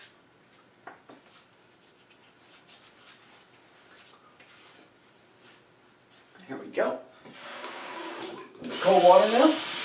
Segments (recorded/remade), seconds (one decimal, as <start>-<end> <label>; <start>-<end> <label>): 0.0-7.5 recorded; 7.5-8.7 remade; 8.7-9.8 recorded